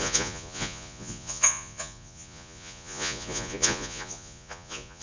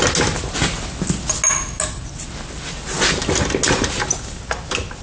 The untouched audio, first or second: second